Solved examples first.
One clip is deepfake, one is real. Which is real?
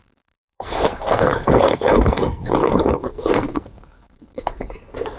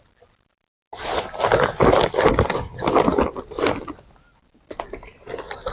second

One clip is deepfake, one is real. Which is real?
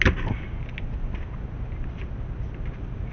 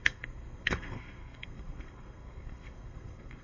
first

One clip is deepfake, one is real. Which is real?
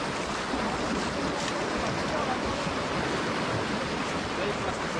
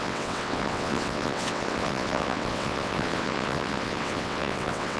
first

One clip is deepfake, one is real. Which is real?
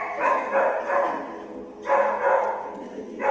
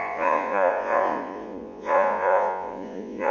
first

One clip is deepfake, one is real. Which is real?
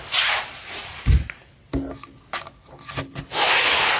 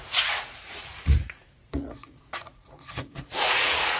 first